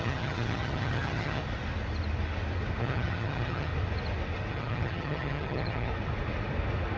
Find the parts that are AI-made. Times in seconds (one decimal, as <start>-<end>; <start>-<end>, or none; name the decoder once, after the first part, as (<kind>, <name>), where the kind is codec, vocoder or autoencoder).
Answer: 0.0-1.4 (vocoder, HiFi-GAN); 2.8-3.7; 4.5-5.9